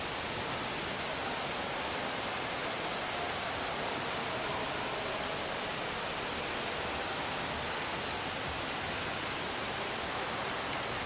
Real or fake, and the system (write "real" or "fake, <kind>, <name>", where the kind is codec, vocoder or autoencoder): real